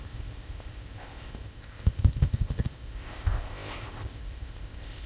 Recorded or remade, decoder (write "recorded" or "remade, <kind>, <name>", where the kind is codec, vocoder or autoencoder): remade, codec, ZipCodec